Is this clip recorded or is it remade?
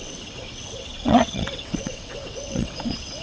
remade